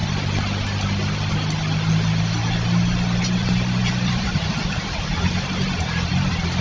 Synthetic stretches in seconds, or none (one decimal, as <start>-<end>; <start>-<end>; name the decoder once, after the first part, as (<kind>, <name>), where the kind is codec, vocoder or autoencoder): 3.8-6.6 (vocoder, BigVGAN v2)